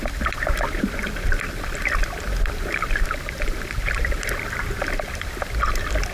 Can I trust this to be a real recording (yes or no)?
yes